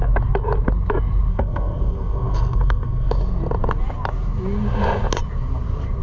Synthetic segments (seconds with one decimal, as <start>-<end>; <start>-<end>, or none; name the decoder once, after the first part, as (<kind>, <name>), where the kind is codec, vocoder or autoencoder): 1.3-3.1 (codec, SNAC)